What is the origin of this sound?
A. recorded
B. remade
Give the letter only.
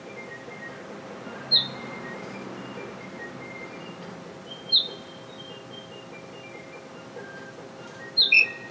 A